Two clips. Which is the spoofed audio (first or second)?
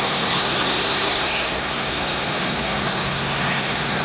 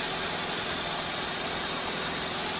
first